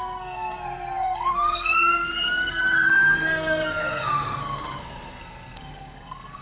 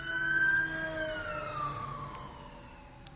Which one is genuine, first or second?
second